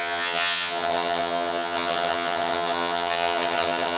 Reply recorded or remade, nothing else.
remade